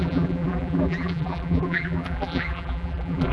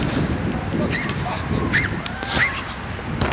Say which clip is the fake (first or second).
first